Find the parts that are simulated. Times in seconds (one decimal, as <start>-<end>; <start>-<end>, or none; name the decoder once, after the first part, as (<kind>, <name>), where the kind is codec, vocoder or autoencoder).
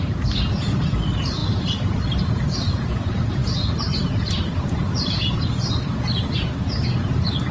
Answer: 3.4-4.6 (vocoder, BigVGAN v2)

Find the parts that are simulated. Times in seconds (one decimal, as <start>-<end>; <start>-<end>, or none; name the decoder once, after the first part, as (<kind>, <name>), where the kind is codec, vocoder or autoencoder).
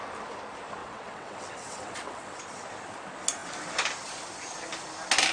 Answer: 0.8-2.4 (vocoder, WaveNeXt)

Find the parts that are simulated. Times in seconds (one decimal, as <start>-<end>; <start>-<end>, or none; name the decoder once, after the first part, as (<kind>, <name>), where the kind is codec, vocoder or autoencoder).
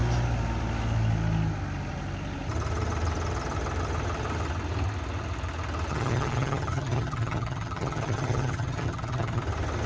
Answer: 5.9-9.4 (vocoder, HiFi-GAN)